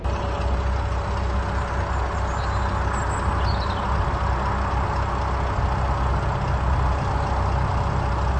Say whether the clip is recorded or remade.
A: recorded